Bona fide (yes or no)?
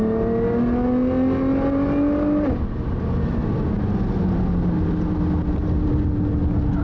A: yes